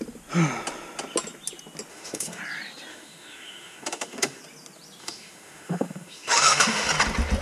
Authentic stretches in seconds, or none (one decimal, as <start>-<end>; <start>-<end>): 0.0-1.9; 2.4-2.9; 4.4-5.0; 6.9-7.4